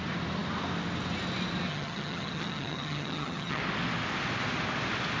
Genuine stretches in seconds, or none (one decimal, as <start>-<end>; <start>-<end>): 0.0-1.7; 3.6-5.2